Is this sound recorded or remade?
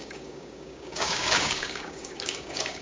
remade